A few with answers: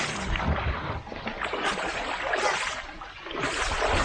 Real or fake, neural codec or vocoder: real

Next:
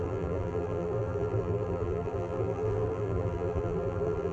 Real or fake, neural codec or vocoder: fake, vocoder, BigVGAN v2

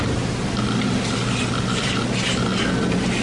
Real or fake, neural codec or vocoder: real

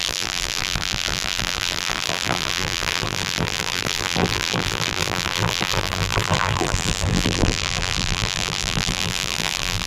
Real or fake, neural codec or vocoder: fake, vocoder, BigVGAN v2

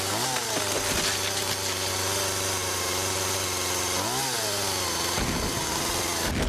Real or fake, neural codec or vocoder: real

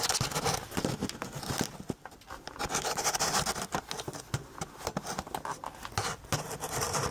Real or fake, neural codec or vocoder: real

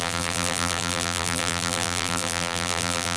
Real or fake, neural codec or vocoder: fake, vocoder, BigVGAN v2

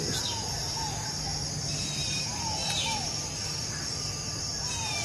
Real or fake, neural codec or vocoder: real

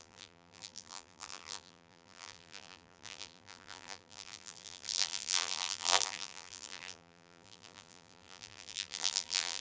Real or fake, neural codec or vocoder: fake, vocoder, BigVGAN v2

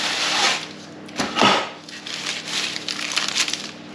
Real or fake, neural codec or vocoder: real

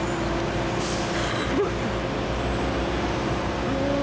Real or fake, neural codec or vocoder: real